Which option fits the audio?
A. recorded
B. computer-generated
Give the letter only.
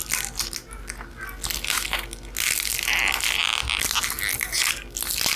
A